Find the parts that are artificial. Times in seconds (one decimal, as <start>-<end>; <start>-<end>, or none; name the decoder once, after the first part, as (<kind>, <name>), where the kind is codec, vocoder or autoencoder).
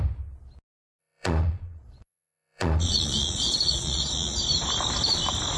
1.0-4.4 (vocoder, Vocos)